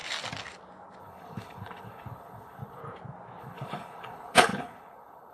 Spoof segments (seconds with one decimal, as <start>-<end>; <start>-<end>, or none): 1.0-2.8; 3.4-5.3